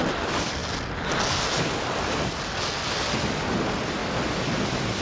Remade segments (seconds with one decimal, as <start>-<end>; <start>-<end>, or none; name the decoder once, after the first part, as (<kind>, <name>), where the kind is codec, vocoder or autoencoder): none